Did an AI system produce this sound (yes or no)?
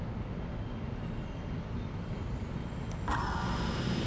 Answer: no